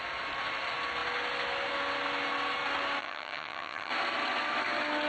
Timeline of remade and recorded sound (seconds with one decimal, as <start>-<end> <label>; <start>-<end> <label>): 0.0-3.0 recorded; 3.0-3.9 remade; 3.9-5.1 recorded

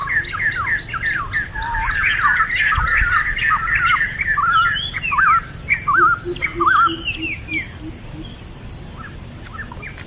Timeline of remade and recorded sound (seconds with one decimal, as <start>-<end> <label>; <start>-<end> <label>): 0.0-10.1 recorded

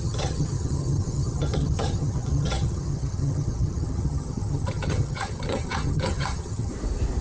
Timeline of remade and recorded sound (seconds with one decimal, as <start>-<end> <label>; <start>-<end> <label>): 0.0-6.7 remade; 6.7-7.2 recorded

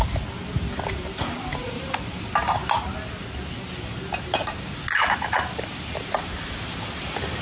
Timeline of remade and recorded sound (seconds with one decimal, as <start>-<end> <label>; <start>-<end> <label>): 0.0-7.4 recorded